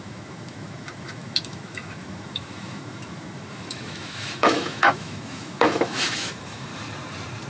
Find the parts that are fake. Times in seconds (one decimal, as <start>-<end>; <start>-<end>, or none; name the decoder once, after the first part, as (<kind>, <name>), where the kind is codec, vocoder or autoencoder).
0.0-6.7 (autoencoder, DAC-VAE)